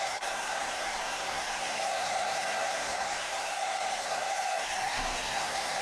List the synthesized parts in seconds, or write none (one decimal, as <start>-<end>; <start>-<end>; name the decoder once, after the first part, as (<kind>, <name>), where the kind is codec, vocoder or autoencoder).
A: 0.0-5.8 (codec, SNAC)